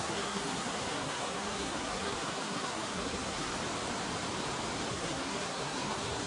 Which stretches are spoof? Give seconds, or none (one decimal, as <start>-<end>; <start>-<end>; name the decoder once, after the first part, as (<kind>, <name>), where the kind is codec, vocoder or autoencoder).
0.0-3.5 (codec, SNAC); 4.9-6.3